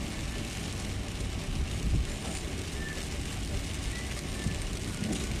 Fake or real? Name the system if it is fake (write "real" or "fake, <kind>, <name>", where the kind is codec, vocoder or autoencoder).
real